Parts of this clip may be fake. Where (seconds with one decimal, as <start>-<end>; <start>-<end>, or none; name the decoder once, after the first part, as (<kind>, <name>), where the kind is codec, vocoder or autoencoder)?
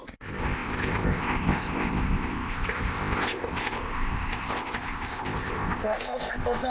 0.0-6.7 (codec, ZipCodec)